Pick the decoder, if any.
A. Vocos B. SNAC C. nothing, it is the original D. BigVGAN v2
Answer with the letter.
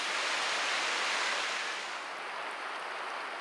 C